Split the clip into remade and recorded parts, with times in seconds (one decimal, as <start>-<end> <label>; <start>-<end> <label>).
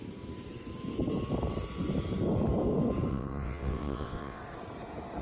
0.0-3.1 recorded; 3.1-4.4 remade; 4.4-5.2 recorded